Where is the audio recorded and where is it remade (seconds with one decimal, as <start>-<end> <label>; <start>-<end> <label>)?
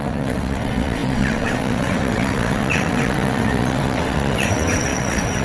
0.0-5.4 remade